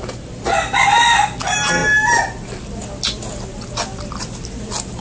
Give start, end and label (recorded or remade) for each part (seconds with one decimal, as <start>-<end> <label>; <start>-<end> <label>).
0.0-5.0 recorded